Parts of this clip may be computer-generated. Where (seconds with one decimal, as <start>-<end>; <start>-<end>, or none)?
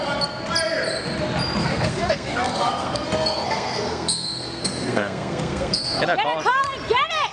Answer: 1.6-6.0